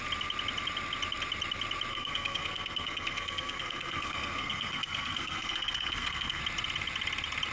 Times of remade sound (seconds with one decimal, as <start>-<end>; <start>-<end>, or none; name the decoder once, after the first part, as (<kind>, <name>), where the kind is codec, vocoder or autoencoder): 1.9-6.4 (codec, SNAC)